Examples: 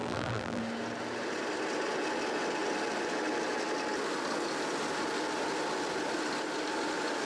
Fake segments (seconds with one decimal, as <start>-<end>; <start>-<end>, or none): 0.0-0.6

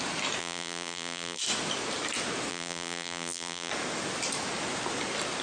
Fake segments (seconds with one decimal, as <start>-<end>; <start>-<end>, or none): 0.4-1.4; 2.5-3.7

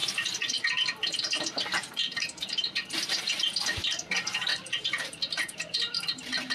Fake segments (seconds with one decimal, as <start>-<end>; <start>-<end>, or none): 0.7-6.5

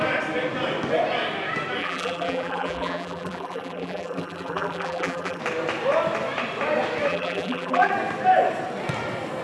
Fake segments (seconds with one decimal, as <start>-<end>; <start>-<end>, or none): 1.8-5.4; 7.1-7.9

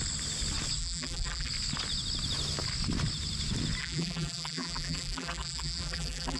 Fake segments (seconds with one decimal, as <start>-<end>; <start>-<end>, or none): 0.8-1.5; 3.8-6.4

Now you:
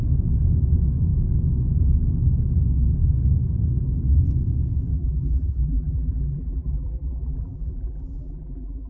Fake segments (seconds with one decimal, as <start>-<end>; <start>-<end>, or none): 4.9-8.9